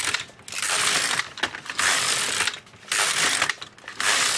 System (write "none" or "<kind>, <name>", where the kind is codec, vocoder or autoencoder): none